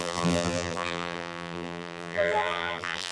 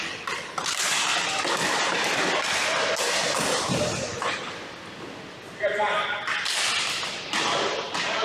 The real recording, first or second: second